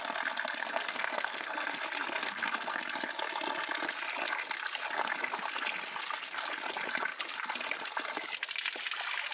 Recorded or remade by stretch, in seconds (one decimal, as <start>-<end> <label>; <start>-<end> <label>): 0.0-0.6 recorded; 0.6-1.8 remade; 1.8-2.2 recorded; 2.2-2.8 remade; 2.8-9.3 recorded